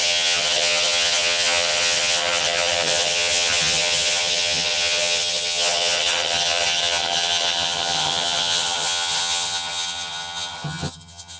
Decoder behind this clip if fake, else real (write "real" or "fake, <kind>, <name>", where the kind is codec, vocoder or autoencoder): fake, vocoder, HiFi-GAN